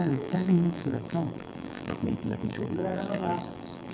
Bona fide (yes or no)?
no